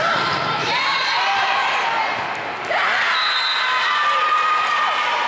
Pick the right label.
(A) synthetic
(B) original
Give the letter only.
B